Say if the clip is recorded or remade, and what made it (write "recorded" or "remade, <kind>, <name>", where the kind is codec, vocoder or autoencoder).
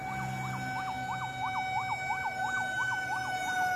recorded